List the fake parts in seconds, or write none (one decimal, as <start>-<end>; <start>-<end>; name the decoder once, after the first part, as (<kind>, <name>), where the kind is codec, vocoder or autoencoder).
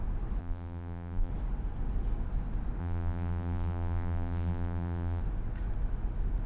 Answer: 0.4-1.3 (vocoder, BigVGAN v2); 2.8-5.2